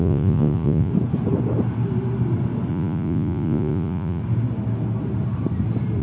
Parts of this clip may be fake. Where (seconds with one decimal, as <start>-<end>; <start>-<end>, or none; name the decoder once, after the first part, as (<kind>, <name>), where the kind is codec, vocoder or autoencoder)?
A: 0.0-0.9 (vocoder, Vocos); 2.7-4.2